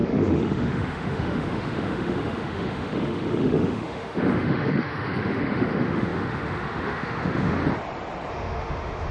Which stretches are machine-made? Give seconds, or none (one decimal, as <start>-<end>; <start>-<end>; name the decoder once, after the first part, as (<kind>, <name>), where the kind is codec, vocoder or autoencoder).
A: 0.0-7.6 (autoencoder, DAC-VAE); 8.3-9.1